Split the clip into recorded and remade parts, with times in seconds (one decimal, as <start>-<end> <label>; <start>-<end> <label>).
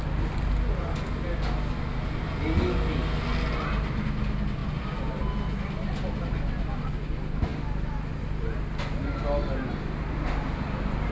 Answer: 0.0-11.1 recorded